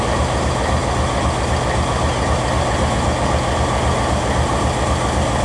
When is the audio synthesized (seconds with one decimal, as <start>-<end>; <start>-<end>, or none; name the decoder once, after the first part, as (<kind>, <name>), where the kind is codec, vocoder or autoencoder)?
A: none